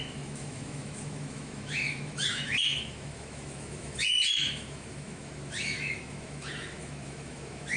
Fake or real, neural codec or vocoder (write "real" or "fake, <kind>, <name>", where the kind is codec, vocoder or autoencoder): fake, autoencoder, DAC-VAE